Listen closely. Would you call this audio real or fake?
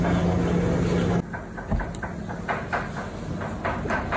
real